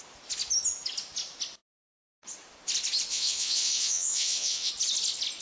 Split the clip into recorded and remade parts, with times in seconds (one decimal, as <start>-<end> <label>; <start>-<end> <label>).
0.0-3.1 recorded; 3.1-4.7 remade; 4.7-5.4 recorded